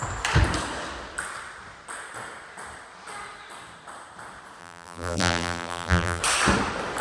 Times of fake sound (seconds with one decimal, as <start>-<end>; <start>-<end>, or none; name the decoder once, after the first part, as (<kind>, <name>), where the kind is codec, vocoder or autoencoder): 4.6-6.2 (vocoder, BigVGAN v2)